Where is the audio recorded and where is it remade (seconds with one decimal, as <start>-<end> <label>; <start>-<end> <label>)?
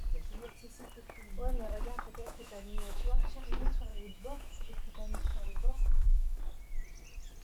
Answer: 0.0-2.2 recorded; 2.2-3.1 remade; 3.1-3.9 recorded; 3.9-4.7 remade; 4.7-5.3 recorded; 5.3-6.4 remade; 6.4-7.4 recorded